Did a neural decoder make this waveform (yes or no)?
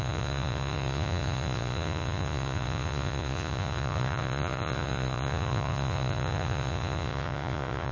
yes